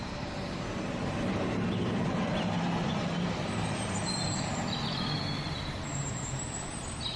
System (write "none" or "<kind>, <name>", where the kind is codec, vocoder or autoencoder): vocoder, BigVGAN v2